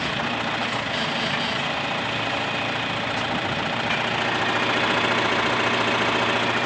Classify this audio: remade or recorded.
recorded